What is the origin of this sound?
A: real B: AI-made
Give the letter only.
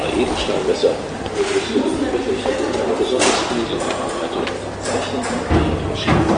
A